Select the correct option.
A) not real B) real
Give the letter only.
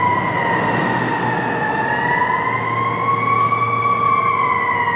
B